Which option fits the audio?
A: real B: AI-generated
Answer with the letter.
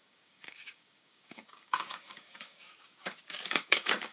B